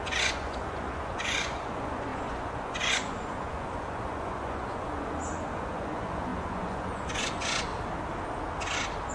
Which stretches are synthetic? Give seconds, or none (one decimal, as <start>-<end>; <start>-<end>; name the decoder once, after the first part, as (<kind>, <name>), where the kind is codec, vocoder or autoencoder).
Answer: 0.0-7.7 (vocoder, Vocos)